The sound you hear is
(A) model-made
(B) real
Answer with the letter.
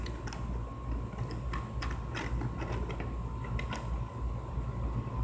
B